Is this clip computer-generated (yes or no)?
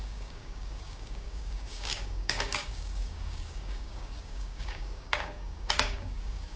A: yes